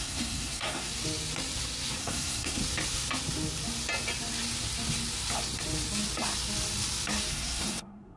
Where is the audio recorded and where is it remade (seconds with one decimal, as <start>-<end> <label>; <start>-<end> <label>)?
0.0-0.9 remade; 0.9-2.0 recorded; 2.0-2.6 remade; 2.6-7.3 recorded; 7.3-8.2 remade